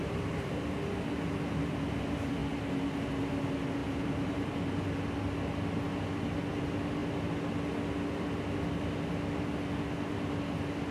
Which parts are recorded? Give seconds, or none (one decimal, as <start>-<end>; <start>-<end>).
0.5-3.8; 4.5-10.9